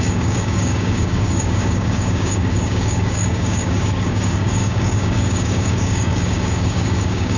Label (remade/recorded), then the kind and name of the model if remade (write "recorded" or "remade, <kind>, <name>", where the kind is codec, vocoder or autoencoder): remade, codec, DAC